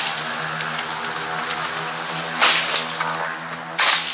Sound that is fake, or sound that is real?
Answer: real